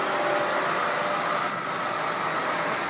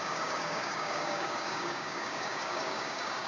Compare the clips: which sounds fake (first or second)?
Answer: second